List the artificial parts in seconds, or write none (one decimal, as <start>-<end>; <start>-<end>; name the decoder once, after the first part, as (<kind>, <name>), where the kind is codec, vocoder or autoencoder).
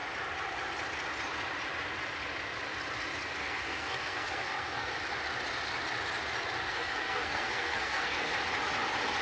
3.4-4.9 (codec, SNAC); 6.7-8.3